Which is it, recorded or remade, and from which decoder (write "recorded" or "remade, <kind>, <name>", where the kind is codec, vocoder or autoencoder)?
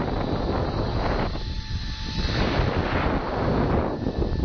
recorded